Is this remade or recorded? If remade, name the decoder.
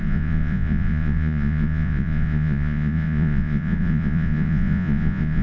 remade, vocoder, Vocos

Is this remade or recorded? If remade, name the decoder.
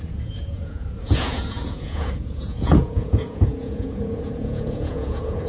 remade, vocoder, Vocos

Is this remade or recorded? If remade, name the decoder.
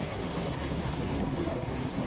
remade, codec, SNAC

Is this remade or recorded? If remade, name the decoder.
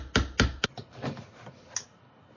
recorded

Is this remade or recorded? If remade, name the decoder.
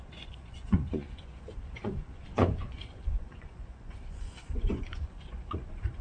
remade, vocoder, Vocos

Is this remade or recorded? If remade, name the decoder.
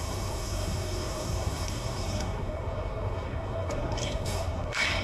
remade, codec, SNAC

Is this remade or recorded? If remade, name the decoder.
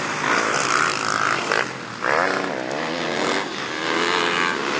recorded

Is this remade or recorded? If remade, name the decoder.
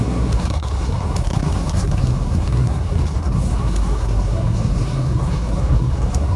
remade, codec, SNAC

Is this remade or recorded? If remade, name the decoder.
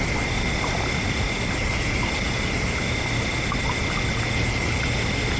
recorded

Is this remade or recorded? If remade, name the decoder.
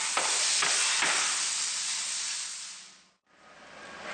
recorded